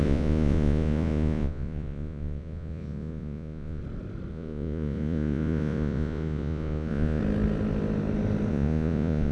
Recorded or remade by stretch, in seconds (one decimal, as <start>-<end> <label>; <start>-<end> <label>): 0.0-3.8 remade; 3.8-4.3 recorded; 4.3-7.2 remade; 7.2-8.5 recorded; 8.5-9.3 remade